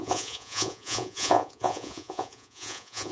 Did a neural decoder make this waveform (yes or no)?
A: yes